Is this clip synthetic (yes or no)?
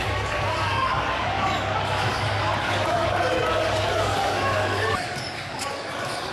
yes